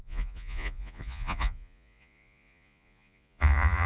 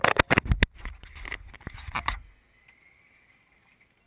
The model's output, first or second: first